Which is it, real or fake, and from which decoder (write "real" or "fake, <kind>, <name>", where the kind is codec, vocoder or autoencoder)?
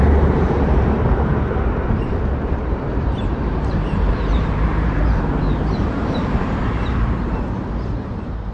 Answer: fake, vocoder, BigVGAN v2